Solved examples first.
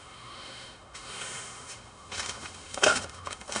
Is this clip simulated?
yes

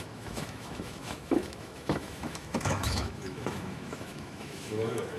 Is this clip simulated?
yes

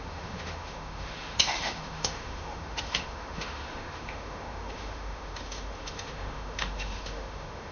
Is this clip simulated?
yes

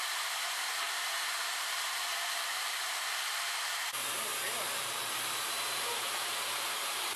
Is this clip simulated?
yes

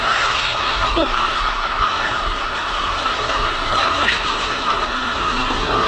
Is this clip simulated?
yes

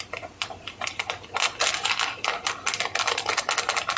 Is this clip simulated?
no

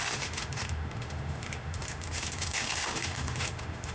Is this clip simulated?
yes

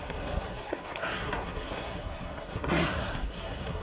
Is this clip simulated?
yes